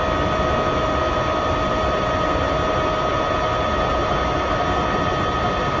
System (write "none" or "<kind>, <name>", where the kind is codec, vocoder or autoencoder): none